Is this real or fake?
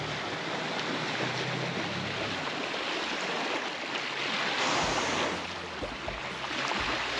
real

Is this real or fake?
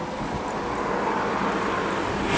real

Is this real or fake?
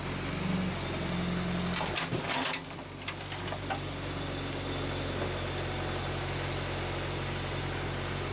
real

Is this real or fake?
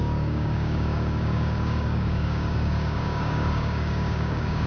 fake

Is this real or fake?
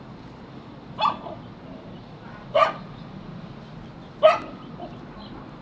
real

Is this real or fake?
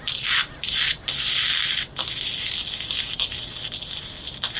real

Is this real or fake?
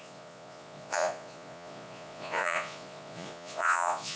fake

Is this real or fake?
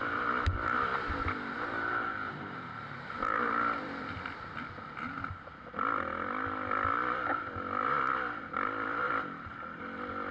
fake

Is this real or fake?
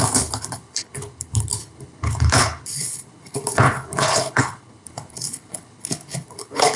fake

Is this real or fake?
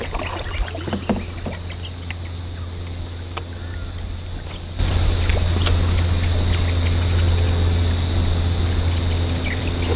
real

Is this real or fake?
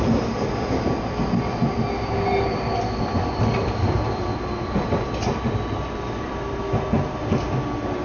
real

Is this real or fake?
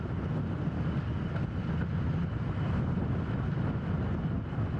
real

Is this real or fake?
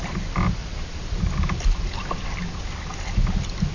real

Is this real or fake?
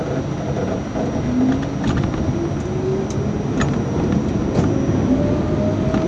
real